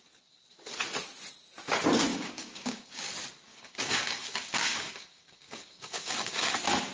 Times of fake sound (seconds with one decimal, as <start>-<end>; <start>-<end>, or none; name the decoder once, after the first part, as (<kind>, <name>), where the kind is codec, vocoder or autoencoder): 2.1-3.1 (codec, DAC); 3.5-6.5